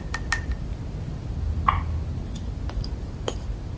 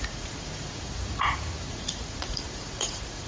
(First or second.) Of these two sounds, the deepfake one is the second